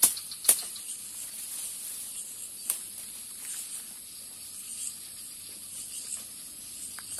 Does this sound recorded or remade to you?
recorded